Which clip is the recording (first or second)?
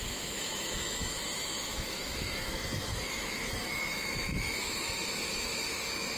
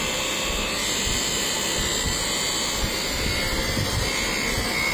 second